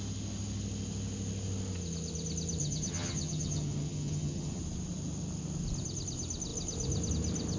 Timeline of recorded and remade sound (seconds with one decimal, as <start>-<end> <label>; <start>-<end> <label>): 0.0-2.6 recorded; 2.6-4.6 remade; 4.6-7.6 recorded